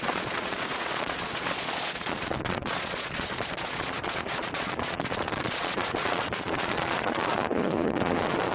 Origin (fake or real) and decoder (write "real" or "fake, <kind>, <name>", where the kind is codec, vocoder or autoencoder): fake, vocoder, Vocos